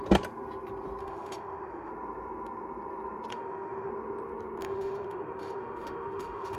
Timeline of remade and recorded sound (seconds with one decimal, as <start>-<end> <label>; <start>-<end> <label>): 0.0-1.0 recorded; 1.0-1.9 remade; 1.9-3.3 recorded; 3.3-3.9 remade; 3.9-4.6 recorded; 4.6-6.6 remade